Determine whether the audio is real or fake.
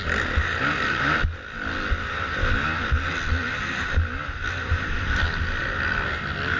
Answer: real